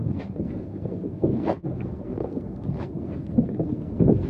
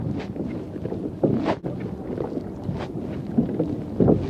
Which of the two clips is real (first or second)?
second